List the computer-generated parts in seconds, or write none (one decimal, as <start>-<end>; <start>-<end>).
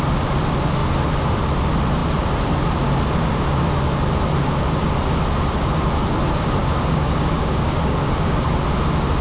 6.6-8.5